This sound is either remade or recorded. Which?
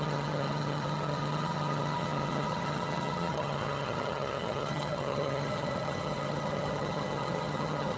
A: remade